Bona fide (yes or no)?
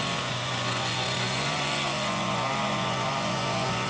no